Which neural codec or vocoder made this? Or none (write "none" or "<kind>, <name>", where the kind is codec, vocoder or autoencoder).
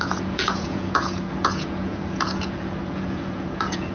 vocoder, Vocos